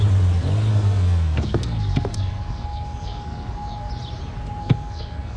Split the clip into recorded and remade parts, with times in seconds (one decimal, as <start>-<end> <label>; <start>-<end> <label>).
0.0-0.7 recorded; 0.7-3.9 remade; 3.9-4.6 recorded; 4.6-5.4 remade